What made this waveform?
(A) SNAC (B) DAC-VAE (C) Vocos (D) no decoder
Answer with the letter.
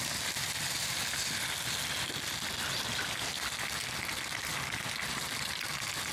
D